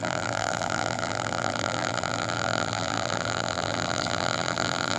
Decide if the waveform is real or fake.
fake